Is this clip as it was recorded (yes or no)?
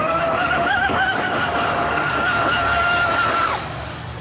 no